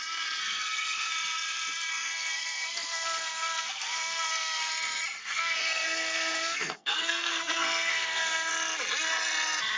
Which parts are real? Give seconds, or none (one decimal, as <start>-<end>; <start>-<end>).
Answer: 0.0-0.4; 1.1-1.9; 4.7-5.2; 8.5-9.8